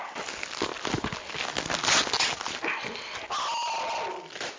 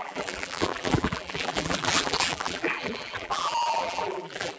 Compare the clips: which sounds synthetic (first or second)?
second